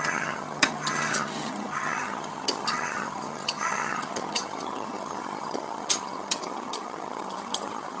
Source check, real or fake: fake